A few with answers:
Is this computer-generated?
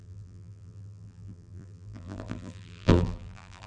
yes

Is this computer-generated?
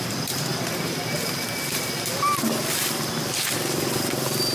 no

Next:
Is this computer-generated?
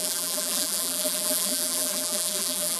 yes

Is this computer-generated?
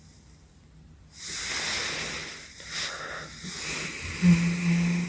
no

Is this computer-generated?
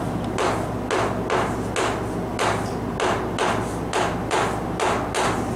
no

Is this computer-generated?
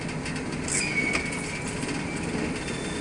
no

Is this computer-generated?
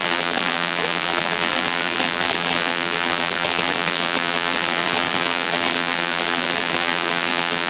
yes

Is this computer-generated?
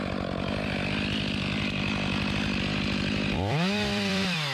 yes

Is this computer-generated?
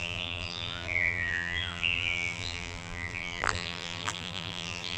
yes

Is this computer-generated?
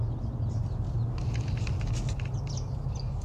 no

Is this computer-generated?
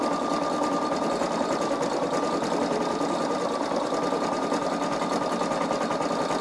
no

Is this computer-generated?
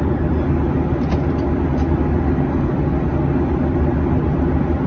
yes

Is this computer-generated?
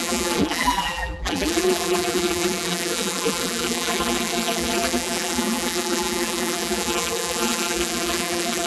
yes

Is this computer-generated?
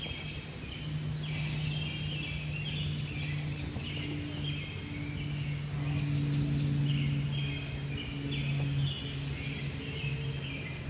no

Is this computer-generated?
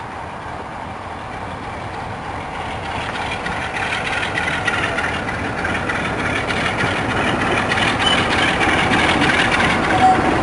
no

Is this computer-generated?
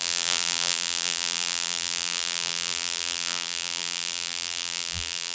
yes